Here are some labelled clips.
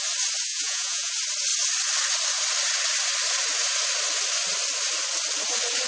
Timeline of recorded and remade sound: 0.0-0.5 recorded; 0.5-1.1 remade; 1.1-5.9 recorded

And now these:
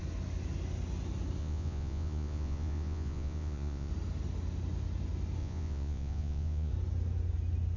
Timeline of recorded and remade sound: 0.0-1.4 recorded; 1.4-3.9 remade; 3.9-5.4 recorded; 5.4-6.7 remade; 6.7-7.8 recorded

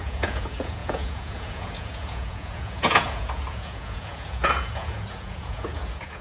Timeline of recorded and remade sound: 0.0-6.2 remade